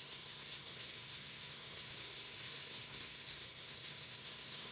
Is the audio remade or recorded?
remade